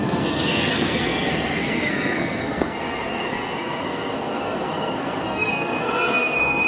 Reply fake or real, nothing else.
fake